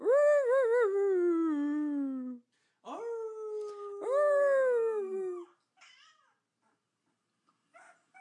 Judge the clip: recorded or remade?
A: recorded